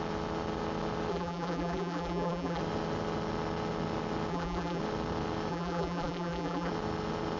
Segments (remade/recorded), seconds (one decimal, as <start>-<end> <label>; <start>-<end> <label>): 0.0-1.1 recorded; 1.1-2.6 remade; 2.6-4.3 recorded; 4.3-4.8 remade; 4.8-5.5 recorded; 5.5-6.7 remade; 6.7-7.4 recorded